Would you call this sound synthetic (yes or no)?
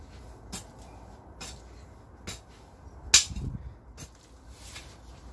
no